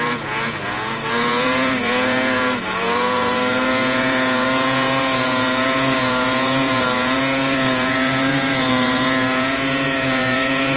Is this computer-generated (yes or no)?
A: yes